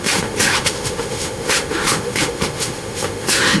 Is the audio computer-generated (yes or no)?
yes